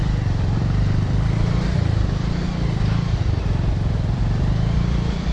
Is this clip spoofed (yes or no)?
yes